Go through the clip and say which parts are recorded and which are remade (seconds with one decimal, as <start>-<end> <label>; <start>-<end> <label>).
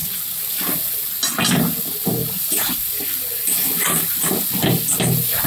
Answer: 0.0-1.0 remade; 1.0-2.2 recorded; 2.2-4.4 remade; 4.4-5.5 recorded